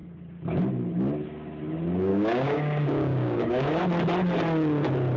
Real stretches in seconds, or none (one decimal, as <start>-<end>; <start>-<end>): 0.0-2.1; 3.8-5.2